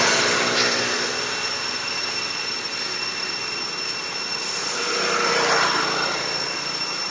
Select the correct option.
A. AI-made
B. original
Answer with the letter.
B